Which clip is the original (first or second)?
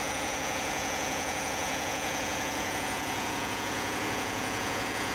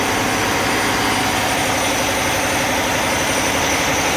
second